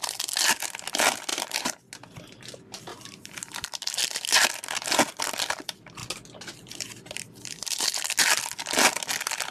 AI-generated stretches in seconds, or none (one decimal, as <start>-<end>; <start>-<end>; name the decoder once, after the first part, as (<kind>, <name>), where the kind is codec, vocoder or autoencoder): 1.3-1.9 (vocoder, BigVGAN v2); 2.9-3.5